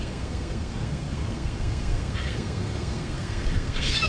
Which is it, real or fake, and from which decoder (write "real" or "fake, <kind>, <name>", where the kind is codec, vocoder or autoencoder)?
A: fake, codec, SNAC